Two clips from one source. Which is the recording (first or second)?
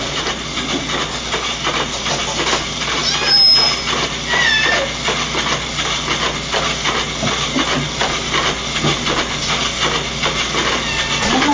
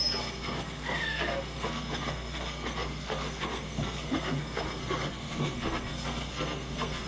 first